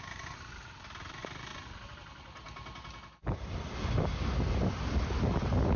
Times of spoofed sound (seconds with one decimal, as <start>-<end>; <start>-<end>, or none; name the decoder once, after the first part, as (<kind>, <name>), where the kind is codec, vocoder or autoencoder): none

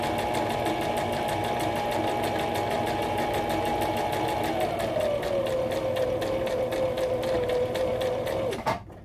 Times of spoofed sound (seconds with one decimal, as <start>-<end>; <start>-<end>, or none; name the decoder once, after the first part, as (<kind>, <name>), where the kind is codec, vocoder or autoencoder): none

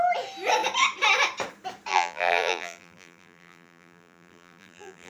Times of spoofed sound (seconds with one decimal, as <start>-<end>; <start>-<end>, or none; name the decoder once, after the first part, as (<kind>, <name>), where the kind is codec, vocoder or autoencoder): 1.9-5.1 (vocoder, BigVGAN v2)

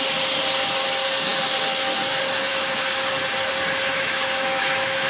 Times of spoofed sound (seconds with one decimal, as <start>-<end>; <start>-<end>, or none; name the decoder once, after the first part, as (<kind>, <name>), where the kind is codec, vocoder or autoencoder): 2.5-3.2 (autoencoder, DAC-VAE); 3.9-5.1

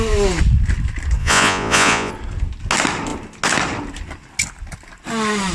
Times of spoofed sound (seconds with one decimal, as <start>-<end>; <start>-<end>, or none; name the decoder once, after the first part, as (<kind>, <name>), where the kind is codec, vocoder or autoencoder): 1.2-2.1 (vocoder, Vocos)

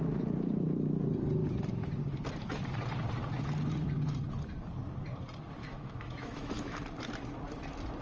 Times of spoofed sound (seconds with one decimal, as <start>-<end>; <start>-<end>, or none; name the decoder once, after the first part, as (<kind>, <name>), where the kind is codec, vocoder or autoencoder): 5.6-6.8 (autoencoder, DAC-VAE)

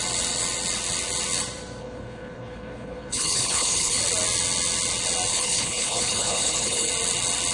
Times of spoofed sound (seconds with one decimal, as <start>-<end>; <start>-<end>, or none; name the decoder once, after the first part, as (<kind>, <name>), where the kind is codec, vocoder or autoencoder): 1.8-4.0 (codec, HILCodec); 5.3-6.9